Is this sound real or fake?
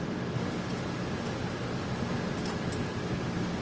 real